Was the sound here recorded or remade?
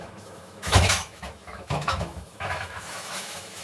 remade